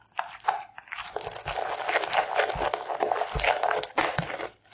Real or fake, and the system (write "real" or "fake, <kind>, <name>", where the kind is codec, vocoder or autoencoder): real